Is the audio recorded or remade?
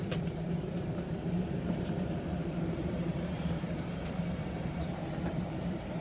remade